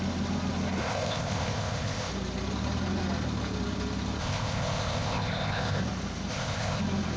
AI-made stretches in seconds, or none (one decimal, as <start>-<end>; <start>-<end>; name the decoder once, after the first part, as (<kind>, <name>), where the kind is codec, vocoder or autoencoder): 0.8-2.1 (codec, ZipCodec); 4.2-5.8; 6.3-6.8